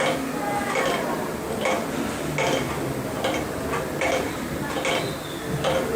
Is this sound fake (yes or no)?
no